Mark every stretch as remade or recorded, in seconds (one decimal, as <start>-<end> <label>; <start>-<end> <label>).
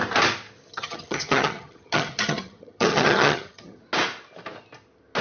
0.0-0.7 recorded; 0.7-3.8 remade; 3.8-5.2 recorded